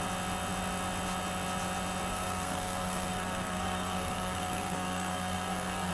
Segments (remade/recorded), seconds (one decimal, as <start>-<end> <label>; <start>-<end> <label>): 0.0-2.1 recorded; 2.1-5.9 remade

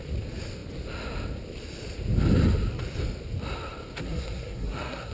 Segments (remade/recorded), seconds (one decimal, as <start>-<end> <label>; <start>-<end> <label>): 0.0-4.0 recorded; 4.0-5.1 remade

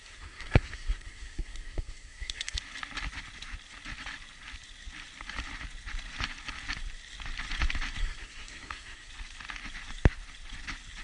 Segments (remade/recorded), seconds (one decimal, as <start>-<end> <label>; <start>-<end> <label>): 0.0-2.6 remade; 2.6-8.0 recorded; 8.0-9.1 remade; 9.1-11.0 recorded

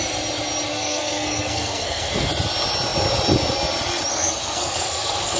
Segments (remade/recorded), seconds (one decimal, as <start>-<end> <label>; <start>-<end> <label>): 0.0-0.7 recorded; 0.7-2.3 remade; 2.3-4.1 recorded; 4.1-5.4 remade

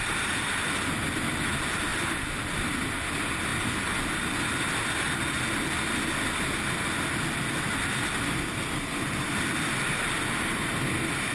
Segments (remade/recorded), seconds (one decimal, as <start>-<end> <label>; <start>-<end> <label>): 0.0-11.3 recorded

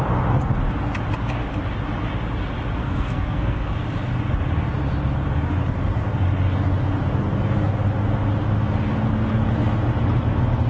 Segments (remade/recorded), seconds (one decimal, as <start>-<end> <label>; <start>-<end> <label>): 0.0-2.8 recorded; 2.8-3.7 remade; 3.7-10.7 recorded

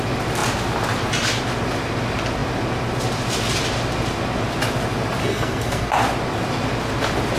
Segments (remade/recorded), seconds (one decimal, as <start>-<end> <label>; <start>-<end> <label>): 0.0-5.2 recorded; 5.2-5.9 remade; 5.9-7.4 recorded

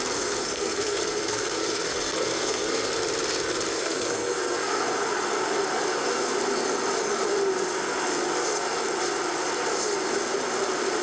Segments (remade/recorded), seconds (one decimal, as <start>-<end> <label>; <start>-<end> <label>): 0.0-0.4 recorded; 0.4-2.9 remade; 2.9-3.7 recorded; 3.7-4.8 remade; 4.8-11.0 recorded